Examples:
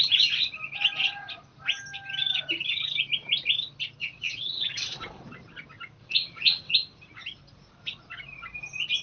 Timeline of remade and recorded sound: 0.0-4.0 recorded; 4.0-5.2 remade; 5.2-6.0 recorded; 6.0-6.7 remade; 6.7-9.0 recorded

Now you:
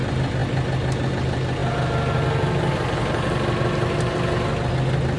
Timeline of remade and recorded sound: 0.0-5.2 recorded

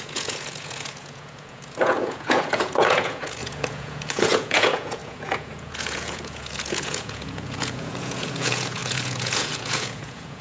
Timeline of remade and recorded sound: 0.0-10.4 remade

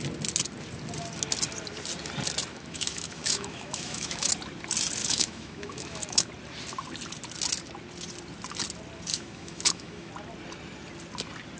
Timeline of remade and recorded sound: 0.0-2.5 recorded; 2.5-4.3 remade; 4.3-5.0 recorded; 5.0-6.3 remade; 6.3-9.1 recorded; 9.1-10.1 remade; 10.1-11.6 recorded

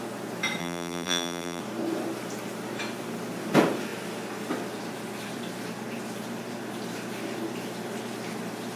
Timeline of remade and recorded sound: 0.0-0.6 recorded; 0.6-1.6 remade; 1.6-8.8 recorded